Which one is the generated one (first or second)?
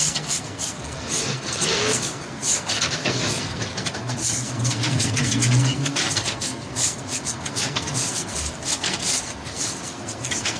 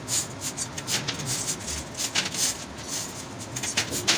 first